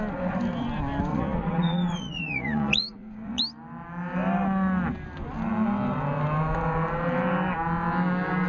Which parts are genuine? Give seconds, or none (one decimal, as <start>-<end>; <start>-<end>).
0.0-1.1; 3.4-8.5